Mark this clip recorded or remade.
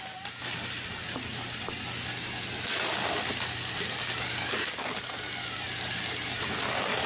recorded